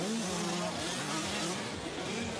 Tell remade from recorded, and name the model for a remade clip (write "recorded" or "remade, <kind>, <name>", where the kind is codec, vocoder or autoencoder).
recorded